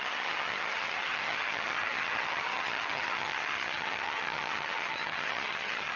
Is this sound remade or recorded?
remade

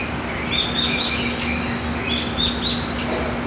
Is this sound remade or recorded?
recorded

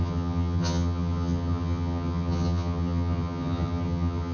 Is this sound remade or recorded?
remade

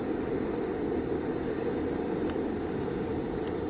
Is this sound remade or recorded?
recorded